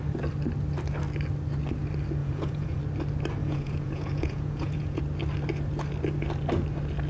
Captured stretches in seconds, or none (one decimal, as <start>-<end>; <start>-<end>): 0.0-2.2; 2.8-3.4; 5.0-7.1